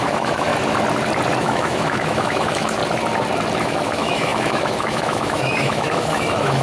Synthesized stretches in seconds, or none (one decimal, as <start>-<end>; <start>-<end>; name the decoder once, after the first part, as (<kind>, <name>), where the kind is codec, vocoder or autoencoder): 0.0-0.5 (autoencoder, DAC-VAE); 1.4-2.8; 3.6-6.6